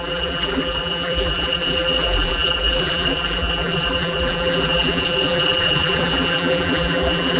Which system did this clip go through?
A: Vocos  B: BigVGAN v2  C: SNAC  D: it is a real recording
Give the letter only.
B